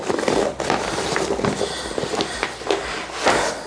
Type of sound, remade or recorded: recorded